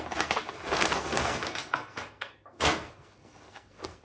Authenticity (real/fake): fake